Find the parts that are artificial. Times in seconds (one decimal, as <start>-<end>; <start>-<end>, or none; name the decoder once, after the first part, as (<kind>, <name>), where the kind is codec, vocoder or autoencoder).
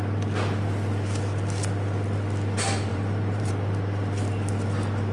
2.9-3.5 (vocoder, BigVGAN v2)